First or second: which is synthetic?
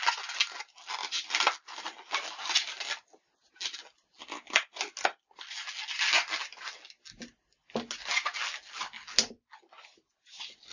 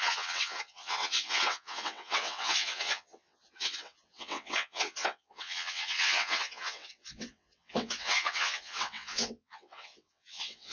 second